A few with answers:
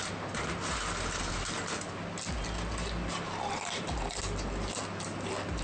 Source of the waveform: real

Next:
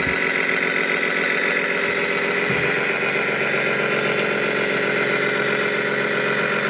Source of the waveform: real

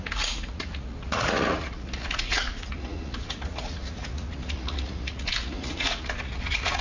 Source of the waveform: fake